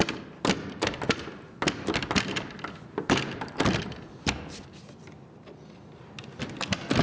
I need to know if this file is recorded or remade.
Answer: recorded